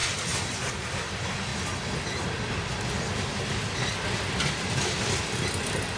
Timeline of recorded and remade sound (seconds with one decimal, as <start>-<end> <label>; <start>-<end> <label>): 0.0-6.0 recorded